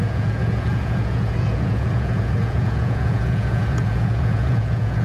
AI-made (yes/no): yes